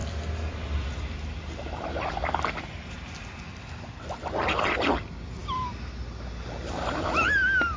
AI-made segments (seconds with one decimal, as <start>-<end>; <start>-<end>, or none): none